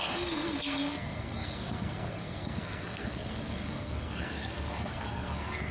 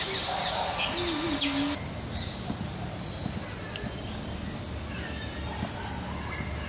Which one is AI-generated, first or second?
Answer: first